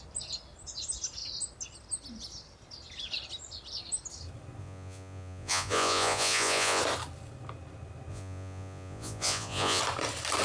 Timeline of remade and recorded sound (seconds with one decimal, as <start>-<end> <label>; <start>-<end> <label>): 0.0-4.6 recorded; 4.6-6.8 remade; 6.8-8.1 recorded; 8.1-9.8 remade; 9.8-10.4 recorded